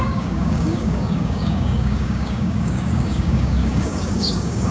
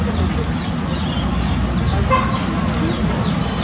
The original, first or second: second